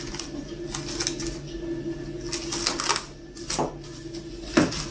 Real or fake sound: real